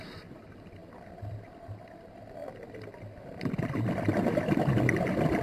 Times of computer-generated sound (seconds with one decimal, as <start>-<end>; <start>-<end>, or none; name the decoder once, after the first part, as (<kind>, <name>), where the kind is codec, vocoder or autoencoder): none